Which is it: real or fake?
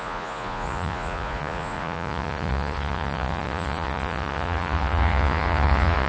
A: fake